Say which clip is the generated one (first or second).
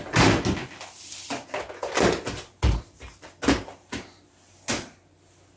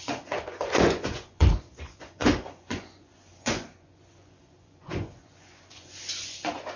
second